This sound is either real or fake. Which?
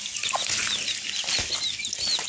real